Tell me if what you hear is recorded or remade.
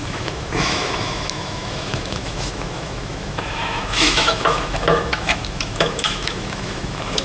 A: remade